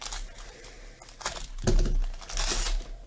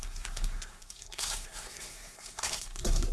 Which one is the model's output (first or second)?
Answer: second